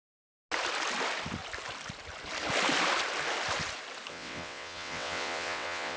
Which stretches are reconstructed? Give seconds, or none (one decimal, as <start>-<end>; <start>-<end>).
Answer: 4.1-6.0